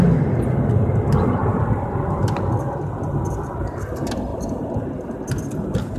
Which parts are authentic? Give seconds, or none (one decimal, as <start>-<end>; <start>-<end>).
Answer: 0.0-6.0